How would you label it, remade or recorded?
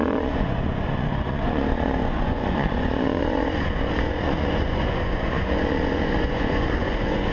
remade